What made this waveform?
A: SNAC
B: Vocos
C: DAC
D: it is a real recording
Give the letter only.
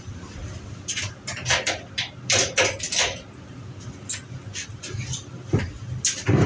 D